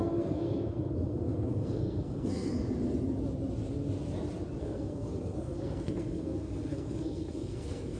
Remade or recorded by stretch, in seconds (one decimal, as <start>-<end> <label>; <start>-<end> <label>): 0.0-2.6 remade; 2.6-4.6 recorded; 4.6-8.0 remade